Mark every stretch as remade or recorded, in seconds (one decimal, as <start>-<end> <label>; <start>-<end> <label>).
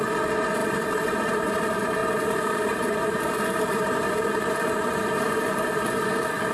0.0-0.6 recorded; 0.6-1.6 remade; 1.6-2.0 recorded; 2.0-5.9 remade; 5.9-6.5 recorded